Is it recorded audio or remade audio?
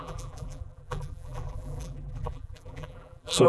remade